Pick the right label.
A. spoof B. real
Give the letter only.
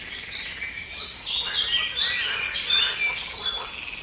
B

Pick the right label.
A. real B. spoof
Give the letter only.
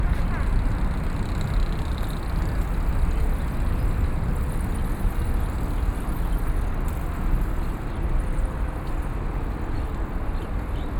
A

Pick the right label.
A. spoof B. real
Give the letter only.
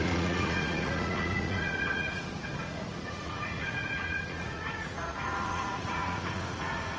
A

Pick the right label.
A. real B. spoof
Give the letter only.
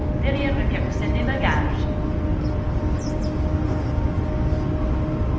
A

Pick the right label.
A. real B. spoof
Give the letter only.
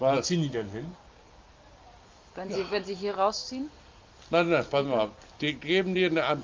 A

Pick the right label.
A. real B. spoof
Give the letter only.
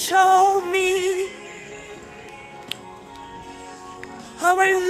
B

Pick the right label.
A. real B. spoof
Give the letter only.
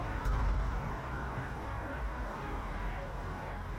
B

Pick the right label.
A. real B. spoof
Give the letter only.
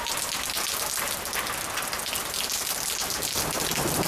A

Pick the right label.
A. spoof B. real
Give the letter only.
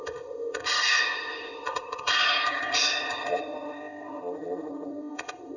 A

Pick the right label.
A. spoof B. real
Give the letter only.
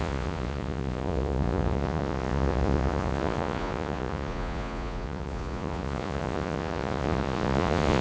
A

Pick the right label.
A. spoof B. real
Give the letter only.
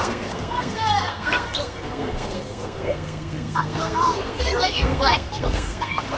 A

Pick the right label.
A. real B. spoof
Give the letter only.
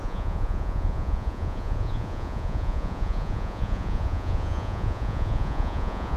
B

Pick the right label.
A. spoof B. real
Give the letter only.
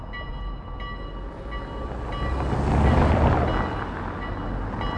B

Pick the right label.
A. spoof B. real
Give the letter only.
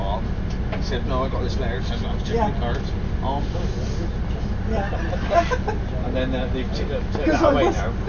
B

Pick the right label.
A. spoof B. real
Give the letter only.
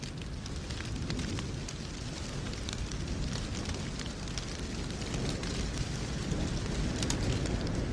B